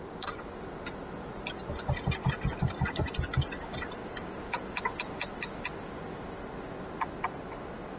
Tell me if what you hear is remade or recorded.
recorded